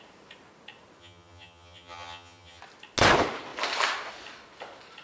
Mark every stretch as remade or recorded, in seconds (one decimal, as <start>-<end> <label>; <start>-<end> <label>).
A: 0.0-1.0 recorded; 1.0-2.6 remade; 2.6-5.0 recorded